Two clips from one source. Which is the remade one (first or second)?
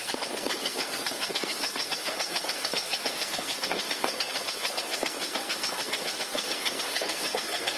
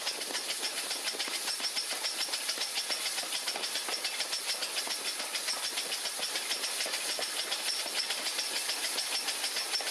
first